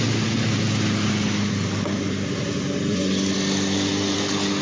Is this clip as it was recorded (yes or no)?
yes